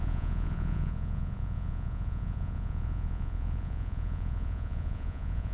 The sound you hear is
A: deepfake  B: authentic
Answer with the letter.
A